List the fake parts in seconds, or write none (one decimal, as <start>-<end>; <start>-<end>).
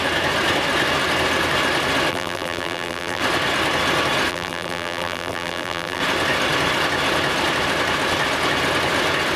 2.1-3.2; 4.3-6.0